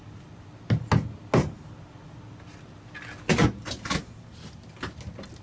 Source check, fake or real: real